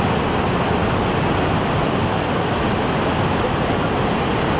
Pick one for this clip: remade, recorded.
recorded